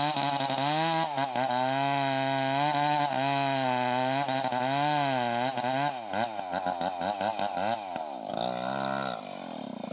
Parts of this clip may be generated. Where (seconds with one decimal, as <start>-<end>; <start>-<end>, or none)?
none